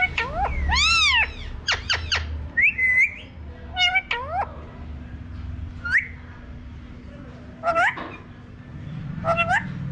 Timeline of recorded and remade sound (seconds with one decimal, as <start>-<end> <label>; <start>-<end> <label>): 0.0-9.9 recorded